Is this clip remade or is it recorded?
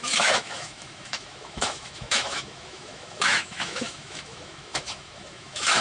remade